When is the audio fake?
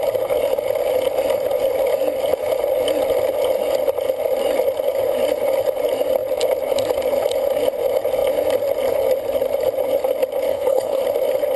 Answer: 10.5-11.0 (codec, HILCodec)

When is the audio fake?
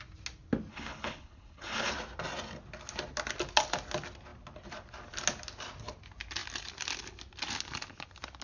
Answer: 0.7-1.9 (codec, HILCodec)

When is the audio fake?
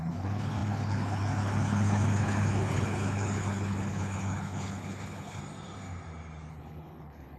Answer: 0.0-5.4 (codec, HILCodec); 6.5-7.4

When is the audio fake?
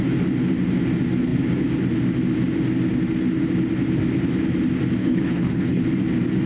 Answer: 5.0-5.8 (codec, HILCodec)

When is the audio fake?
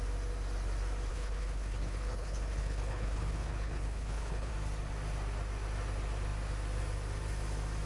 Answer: 1.1-4.5 (codec, HILCodec)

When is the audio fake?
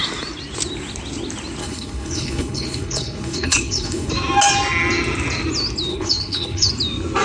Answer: 1.6-4.1 (codec, HILCodec); 5.9-6.7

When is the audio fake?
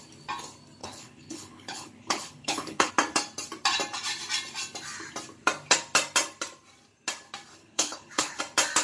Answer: 0.8-2.9 (codec, HILCodec); 7.6-8.4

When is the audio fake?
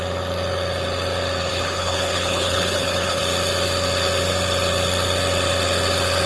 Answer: 1.5-3.2 (codec, HILCodec)